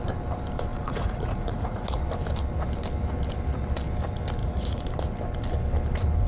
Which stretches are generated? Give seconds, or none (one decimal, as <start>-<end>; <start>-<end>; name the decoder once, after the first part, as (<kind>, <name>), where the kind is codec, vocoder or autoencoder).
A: 0.7-2.0 (vocoder, Vocos); 4.4-4.9